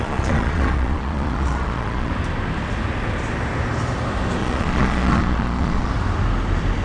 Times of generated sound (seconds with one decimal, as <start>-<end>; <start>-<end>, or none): 0.0-2.1; 4.4-5.9